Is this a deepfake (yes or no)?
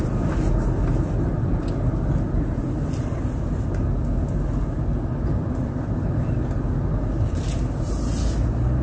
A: no